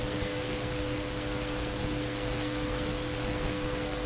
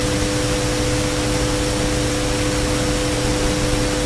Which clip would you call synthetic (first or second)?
first